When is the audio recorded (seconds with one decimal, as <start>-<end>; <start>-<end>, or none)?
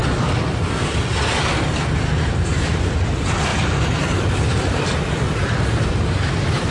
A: 0.0-3.5